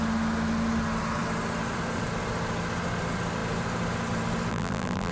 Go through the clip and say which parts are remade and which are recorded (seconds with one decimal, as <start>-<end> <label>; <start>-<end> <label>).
0.0-4.5 recorded; 4.5-5.1 remade